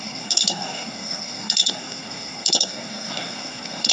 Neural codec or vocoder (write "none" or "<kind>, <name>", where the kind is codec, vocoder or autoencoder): codec, SNAC